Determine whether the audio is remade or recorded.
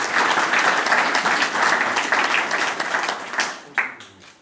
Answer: recorded